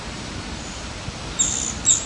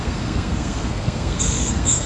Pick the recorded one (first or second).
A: first